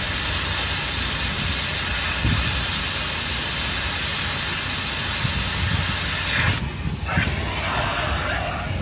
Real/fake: real